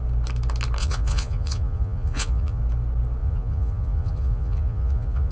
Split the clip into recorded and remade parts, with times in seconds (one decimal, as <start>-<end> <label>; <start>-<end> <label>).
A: 0.0-0.8 recorded; 0.8-2.6 remade; 2.6-3.2 recorded; 3.2-5.3 remade